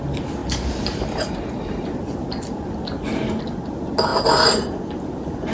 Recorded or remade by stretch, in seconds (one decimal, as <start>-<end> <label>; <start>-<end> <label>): 0.0-0.4 recorded; 0.4-2.1 remade; 2.1-5.5 recorded